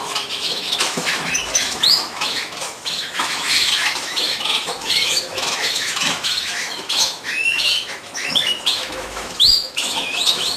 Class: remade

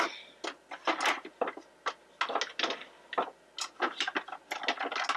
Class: recorded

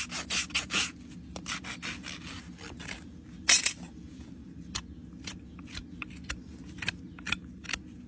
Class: recorded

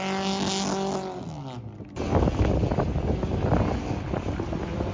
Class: recorded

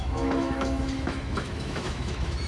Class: remade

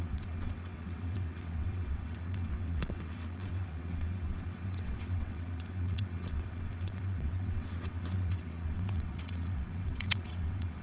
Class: remade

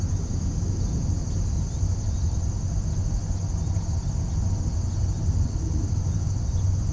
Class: recorded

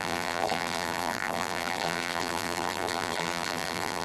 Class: remade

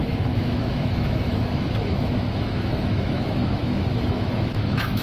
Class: remade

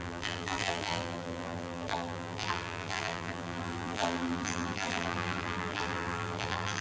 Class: remade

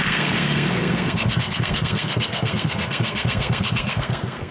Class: remade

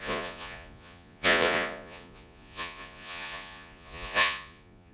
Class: remade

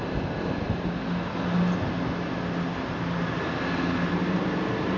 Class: recorded